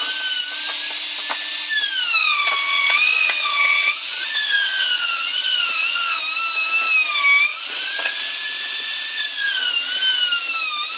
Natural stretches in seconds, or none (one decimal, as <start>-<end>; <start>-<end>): 0.0-2.2; 6.2-7.5; 9.7-11.0